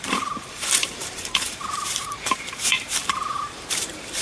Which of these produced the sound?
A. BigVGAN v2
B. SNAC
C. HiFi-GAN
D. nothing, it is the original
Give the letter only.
A